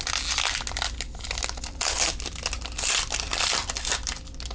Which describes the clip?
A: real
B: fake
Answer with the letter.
A